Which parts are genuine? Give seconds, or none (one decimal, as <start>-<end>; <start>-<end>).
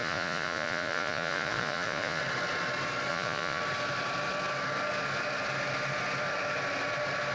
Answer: 2.2-3.1; 3.6-7.3